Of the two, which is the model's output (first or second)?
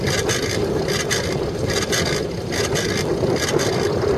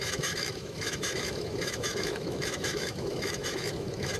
second